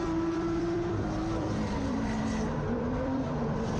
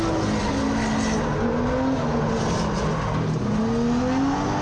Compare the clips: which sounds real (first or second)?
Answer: second